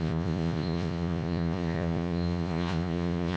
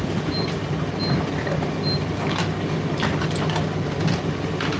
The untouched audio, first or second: second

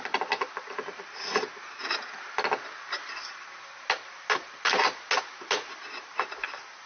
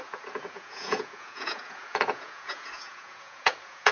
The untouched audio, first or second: first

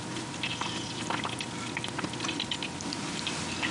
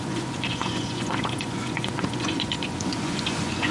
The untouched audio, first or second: first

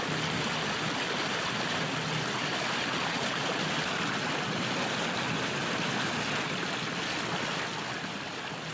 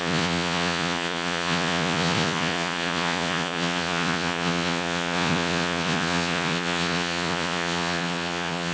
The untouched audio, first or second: first